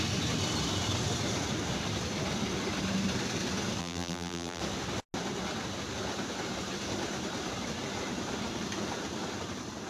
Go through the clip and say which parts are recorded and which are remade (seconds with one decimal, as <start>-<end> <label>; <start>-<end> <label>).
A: 0.0-3.8 recorded; 3.8-4.6 remade; 4.6-9.9 recorded